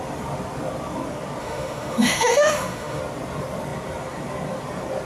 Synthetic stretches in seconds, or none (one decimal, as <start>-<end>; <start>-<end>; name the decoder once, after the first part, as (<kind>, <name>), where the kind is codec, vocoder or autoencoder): 1.4-3.0 (autoencoder, DAC-VAE)